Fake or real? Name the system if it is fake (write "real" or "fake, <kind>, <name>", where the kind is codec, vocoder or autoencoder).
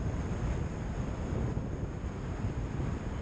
real